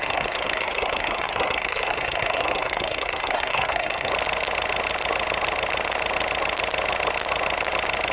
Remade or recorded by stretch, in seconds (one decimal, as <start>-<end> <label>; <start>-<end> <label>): 0.0-4.1 remade; 4.1-8.1 recorded